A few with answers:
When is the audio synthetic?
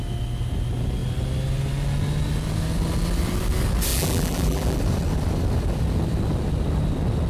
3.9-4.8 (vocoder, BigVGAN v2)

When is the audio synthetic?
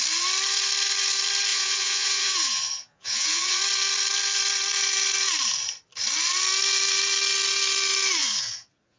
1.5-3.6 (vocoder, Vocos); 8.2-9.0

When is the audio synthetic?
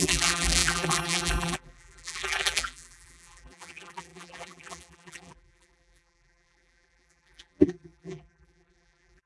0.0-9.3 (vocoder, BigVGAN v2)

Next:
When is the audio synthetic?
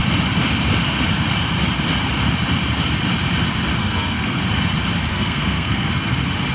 3.8-4.4 (codec, SNAC); 5.1-5.9